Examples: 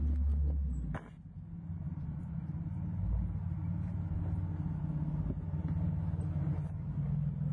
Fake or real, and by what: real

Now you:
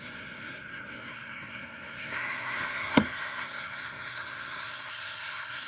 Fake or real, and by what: fake, codec, SNAC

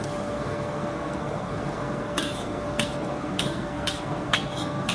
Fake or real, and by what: fake, codec, SNAC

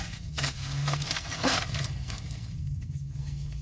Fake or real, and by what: fake, codec, SNAC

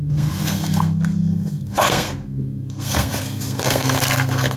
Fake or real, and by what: fake, codec, SNAC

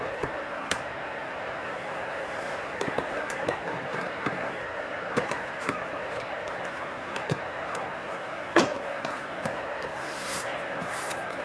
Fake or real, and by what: fake, codec, SNAC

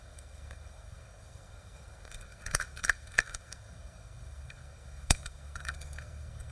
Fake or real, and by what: fake, codec, SNAC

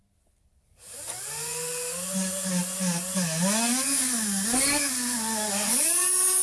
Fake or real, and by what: real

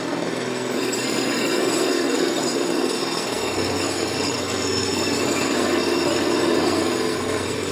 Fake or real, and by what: fake, codec, SNAC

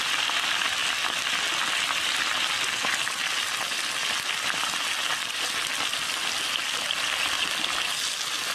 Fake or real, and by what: real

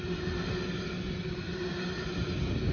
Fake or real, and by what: real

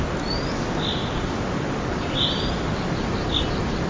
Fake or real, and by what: real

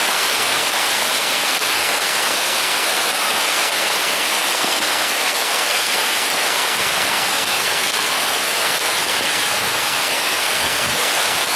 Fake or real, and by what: fake, codec, SNAC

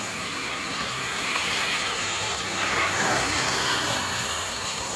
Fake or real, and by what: fake, codec, SNAC